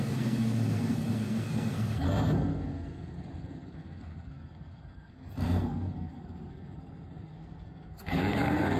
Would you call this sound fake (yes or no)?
yes